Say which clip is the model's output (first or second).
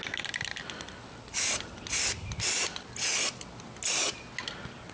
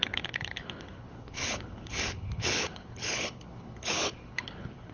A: second